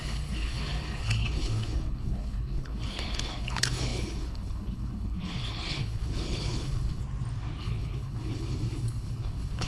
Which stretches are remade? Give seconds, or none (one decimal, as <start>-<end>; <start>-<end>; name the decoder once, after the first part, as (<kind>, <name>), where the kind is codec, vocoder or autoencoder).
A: 0.0-7.0 (codec, HILCodec); 7.6-9.7